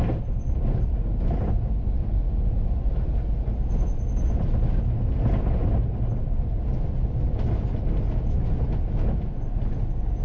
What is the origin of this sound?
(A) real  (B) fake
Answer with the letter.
A